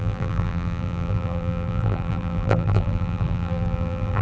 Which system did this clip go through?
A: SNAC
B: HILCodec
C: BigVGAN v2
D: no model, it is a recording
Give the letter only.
C